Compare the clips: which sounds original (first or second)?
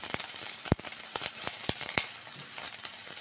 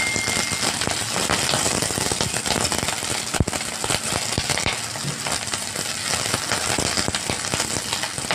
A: second